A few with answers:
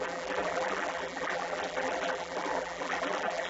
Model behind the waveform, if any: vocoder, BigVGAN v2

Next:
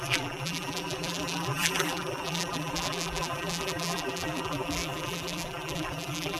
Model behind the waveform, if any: vocoder, BigVGAN v2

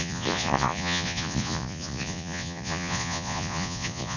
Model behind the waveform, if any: vocoder, Vocos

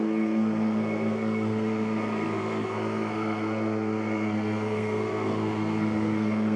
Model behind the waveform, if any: codec, SNAC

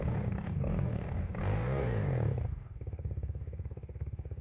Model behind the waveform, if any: codec, DAC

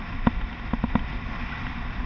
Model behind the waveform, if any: none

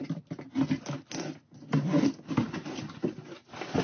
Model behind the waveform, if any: none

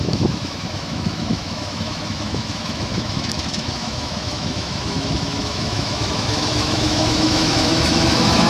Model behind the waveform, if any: autoencoder, DAC-VAE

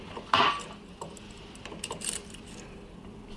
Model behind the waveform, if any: none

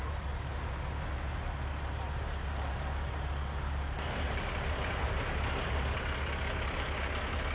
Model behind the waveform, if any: none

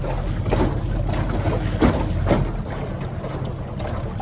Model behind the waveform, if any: none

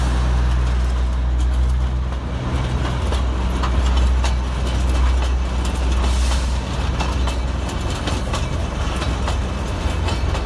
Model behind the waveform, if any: none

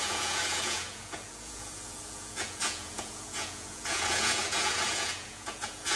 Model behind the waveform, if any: vocoder, Vocos